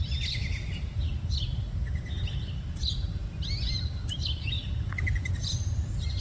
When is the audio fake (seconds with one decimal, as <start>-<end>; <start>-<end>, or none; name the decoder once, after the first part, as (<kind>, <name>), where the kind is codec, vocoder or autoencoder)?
none